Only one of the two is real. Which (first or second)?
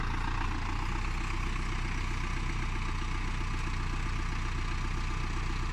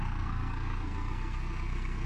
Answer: first